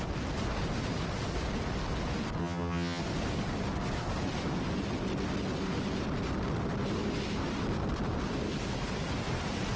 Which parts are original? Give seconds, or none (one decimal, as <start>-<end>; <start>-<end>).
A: 0.0-2.4; 3.0-9.8